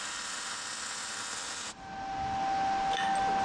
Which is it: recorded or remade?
recorded